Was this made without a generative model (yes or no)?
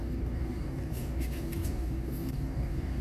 no